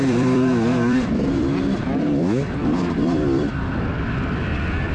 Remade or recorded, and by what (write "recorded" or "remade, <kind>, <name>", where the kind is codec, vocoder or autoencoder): remade, vocoder, BigVGAN v2